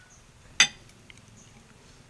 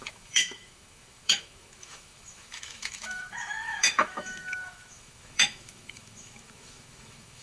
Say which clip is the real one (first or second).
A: first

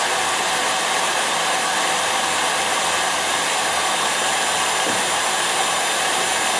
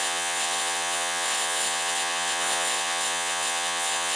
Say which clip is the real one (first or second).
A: first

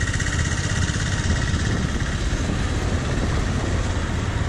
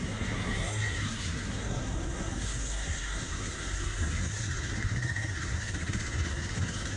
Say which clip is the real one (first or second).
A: first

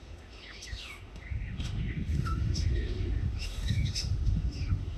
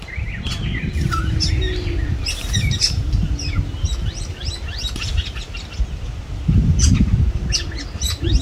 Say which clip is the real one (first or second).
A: second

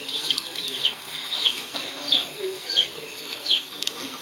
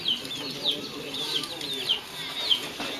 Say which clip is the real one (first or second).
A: second